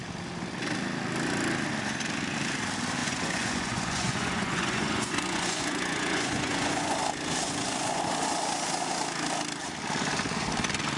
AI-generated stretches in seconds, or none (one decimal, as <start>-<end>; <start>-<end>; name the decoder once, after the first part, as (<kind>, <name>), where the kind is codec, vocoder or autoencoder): 3.0-7.0 (vocoder, Vocos); 7.4-8.0